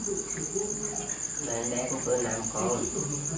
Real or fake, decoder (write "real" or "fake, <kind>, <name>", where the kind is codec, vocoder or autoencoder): real